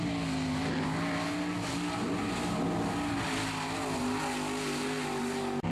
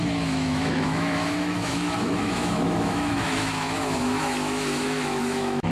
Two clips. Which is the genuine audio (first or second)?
first